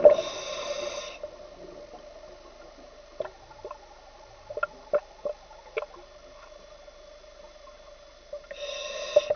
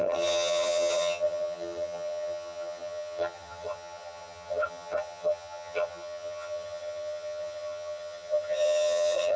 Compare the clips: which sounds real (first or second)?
first